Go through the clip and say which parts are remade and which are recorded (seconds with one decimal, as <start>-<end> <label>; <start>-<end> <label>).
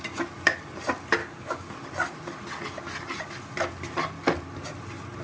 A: 0.0-1.2 recorded; 1.2-1.7 remade; 1.7-5.2 recorded